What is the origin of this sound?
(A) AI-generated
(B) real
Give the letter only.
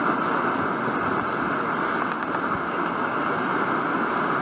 B